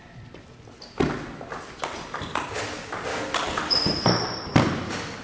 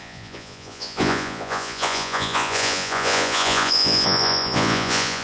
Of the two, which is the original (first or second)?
first